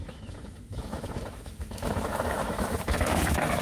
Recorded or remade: remade